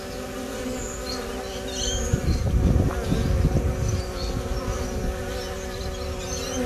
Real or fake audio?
real